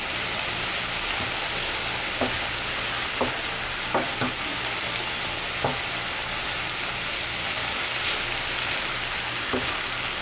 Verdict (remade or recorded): recorded